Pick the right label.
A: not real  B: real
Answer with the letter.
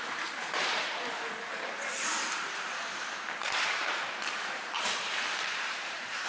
A